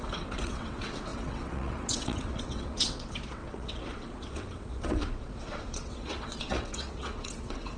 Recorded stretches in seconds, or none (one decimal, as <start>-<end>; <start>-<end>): none